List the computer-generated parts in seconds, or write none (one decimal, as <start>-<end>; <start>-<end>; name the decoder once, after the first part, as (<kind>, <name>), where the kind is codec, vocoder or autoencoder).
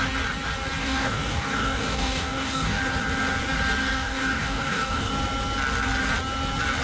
0.8-2.8 (codec, DAC); 3.8-5.1